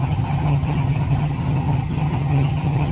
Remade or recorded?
remade